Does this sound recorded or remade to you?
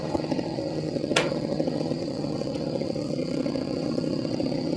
remade